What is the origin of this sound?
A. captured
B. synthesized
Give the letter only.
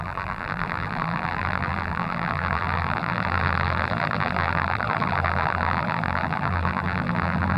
B